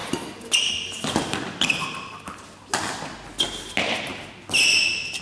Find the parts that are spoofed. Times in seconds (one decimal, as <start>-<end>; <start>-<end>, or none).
none